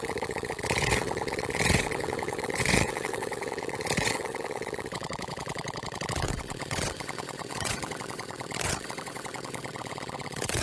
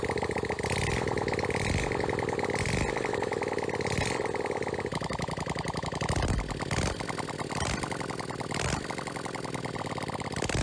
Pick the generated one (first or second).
first